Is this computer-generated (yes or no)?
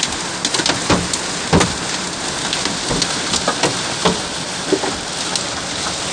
no